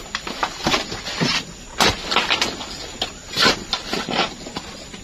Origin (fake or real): real